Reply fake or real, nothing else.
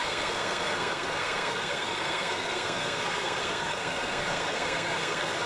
fake